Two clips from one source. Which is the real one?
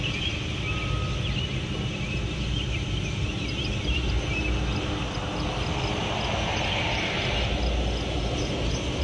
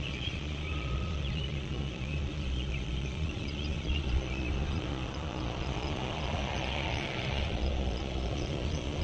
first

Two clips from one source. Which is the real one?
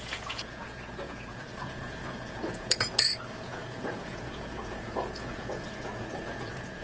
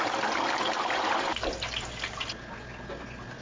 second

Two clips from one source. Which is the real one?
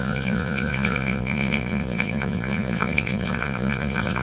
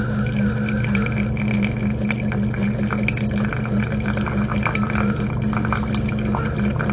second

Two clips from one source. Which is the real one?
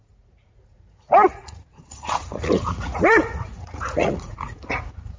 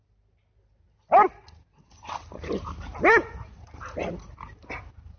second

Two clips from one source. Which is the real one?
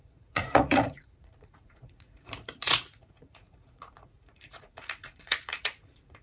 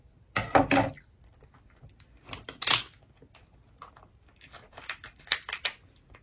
second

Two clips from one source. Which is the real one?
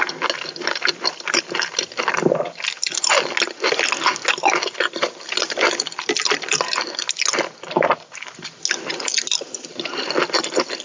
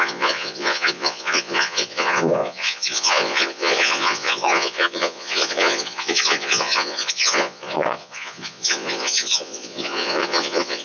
first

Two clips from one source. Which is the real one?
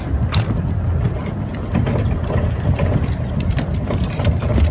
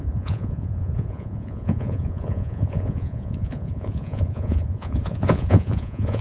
first